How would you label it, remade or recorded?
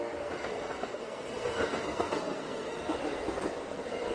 remade